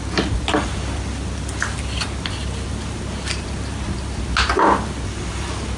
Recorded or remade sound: recorded